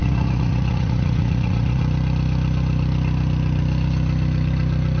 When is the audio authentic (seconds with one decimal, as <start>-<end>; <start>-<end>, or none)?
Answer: 1.8-5.0

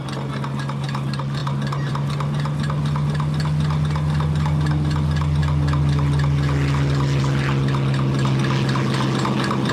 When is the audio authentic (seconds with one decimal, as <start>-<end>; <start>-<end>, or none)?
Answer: 0.0-9.7

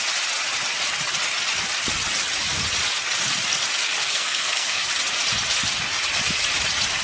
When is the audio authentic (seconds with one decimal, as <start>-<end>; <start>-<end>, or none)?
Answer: 0.0-4.0; 4.9-7.0

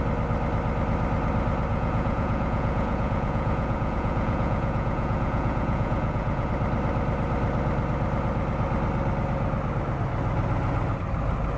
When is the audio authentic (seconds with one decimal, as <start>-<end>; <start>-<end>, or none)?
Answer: 0.0-1.7; 6.5-11.6

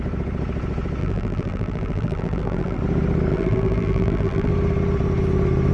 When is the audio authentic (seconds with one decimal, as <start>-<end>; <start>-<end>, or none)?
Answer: 0.0-1.0; 2.8-3.3; 4.5-5.7

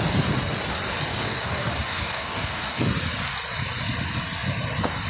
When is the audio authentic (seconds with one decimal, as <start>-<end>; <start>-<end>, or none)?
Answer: 0.0-1.1; 2.8-5.1